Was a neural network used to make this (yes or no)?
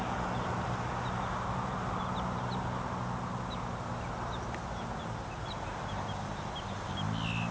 no